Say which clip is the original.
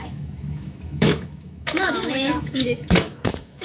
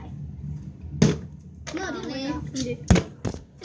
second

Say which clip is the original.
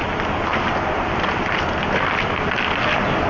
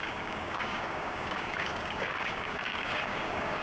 first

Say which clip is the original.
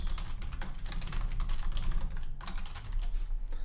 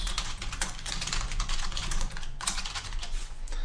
first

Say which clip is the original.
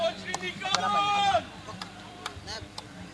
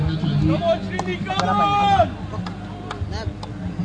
second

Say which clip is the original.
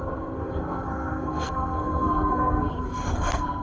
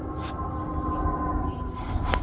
second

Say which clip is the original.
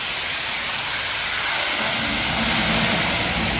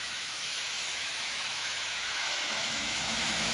first